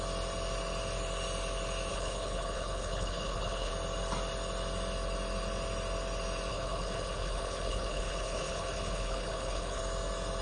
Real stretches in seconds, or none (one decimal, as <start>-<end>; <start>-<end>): 0.0-1.9; 3.7-6.5; 9.8-10.4